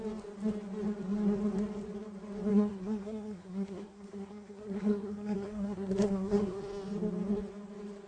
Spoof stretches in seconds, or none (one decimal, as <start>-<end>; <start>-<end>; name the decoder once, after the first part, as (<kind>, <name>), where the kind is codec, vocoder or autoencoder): 2.5-6.6 (codec, SNAC)